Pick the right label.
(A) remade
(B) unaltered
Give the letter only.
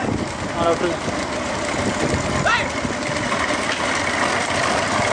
B